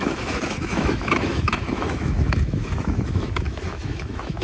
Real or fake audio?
fake